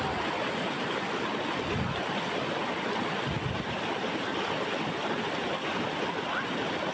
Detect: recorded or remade recorded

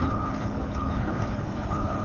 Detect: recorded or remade remade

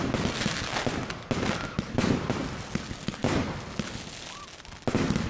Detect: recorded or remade recorded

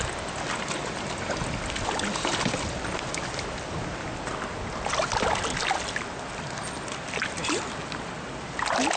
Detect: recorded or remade recorded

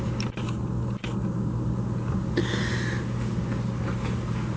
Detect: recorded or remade recorded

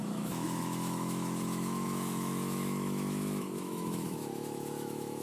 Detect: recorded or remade remade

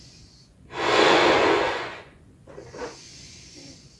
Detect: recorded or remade remade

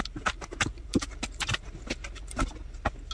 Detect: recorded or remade recorded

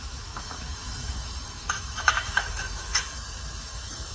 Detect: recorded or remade remade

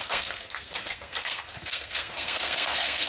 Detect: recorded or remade remade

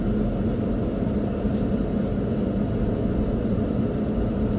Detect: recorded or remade recorded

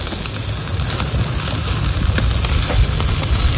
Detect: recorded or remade recorded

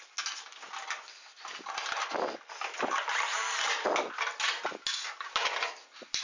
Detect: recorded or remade recorded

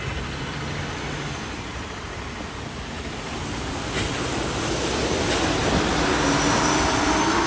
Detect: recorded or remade recorded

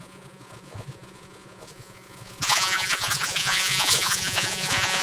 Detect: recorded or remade remade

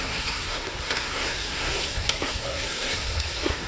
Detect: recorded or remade remade